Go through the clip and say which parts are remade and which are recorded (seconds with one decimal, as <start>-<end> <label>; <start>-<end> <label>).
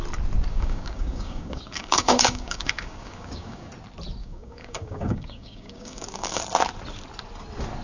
0.0-0.5 recorded; 0.5-3.7 remade; 3.7-4.2 recorded; 4.2-6.4 remade; 6.4-7.8 recorded